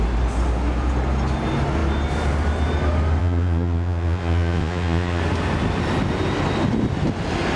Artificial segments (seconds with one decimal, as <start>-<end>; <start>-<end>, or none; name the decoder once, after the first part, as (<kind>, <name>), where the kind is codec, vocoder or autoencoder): 3.2-5.2 (vocoder, Vocos)